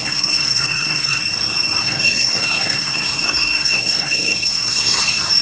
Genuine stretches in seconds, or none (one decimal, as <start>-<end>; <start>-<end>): 1.2-1.8; 5.0-5.4